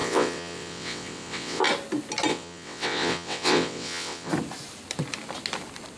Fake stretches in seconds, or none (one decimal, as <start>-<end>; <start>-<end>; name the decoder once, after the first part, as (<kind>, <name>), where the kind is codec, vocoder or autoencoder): 0.0-1.6 (vocoder, WaveNeXt); 2.3-4.3